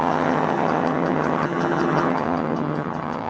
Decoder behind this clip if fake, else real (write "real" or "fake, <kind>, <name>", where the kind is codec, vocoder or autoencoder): fake, vocoder, HiFi-GAN